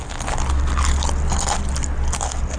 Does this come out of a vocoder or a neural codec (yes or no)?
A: no